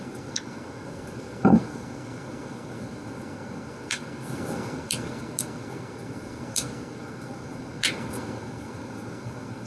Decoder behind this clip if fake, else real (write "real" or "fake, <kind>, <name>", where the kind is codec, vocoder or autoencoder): fake, codec, SNAC